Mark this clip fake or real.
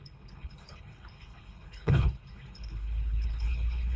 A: fake